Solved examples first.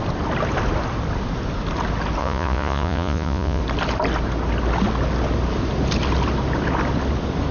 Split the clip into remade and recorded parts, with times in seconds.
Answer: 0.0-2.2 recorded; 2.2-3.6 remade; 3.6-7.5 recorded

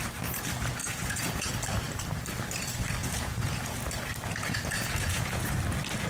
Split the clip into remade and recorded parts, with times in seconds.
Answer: 0.0-0.8 recorded; 0.8-1.5 remade; 1.5-3.0 recorded; 3.0-3.6 remade; 3.6-4.4 recorded; 4.4-5.6 remade; 5.6-6.1 recorded

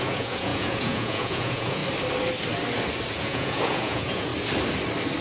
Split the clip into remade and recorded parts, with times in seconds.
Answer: 0.0-1.8 remade; 1.8-3.1 recorded; 3.1-4.3 remade; 4.3-5.2 recorded

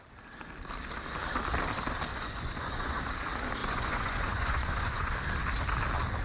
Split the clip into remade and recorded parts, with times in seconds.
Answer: 0.0-2.1 recorded; 2.1-3.0 remade; 3.0-3.6 recorded; 3.6-5.1 remade; 5.1-6.2 recorded

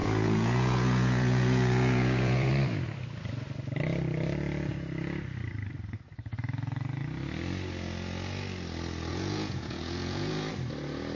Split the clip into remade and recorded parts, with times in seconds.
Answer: 0.0-2.5 remade; 2.5-9.1 recorded; 9.1-10.5 remade; 10.5-11.1 recorded